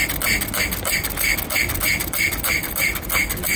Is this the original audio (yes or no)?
yes